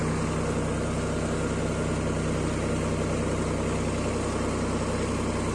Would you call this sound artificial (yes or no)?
no